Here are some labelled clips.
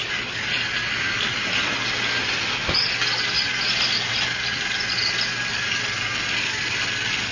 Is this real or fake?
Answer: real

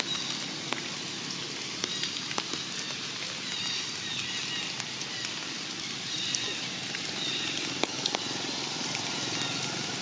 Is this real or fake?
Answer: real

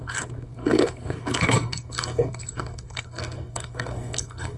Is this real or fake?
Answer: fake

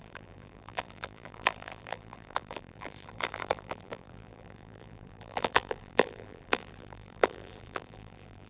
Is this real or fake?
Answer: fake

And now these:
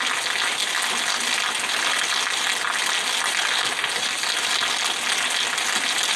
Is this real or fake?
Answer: real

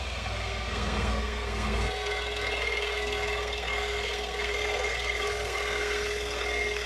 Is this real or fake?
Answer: fake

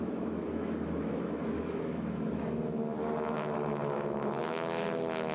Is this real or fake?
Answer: fake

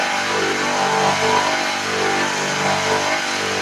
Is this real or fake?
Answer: real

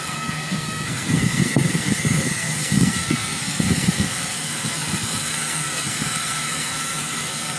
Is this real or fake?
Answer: fake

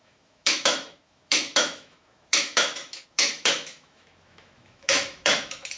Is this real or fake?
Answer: fake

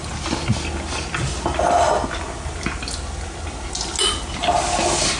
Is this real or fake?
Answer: real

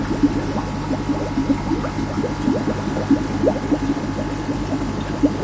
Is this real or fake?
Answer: real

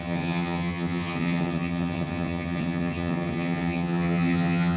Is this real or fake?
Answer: fake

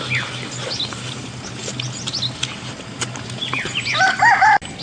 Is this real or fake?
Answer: real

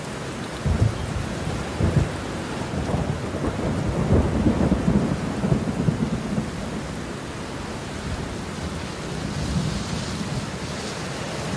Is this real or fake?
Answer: real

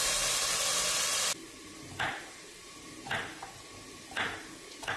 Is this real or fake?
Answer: real